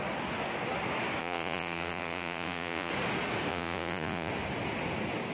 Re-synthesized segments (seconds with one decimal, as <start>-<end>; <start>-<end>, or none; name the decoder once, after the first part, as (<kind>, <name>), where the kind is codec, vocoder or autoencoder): 1.2-2.9 (vocoder, Vocos); 3.5-4.3